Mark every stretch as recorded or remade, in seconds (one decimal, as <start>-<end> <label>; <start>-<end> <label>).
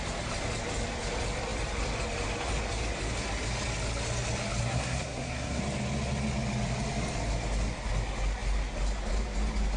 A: 0.0-4.6 recorded; 4.6-5.6 remade; 5.6-9.8 recorded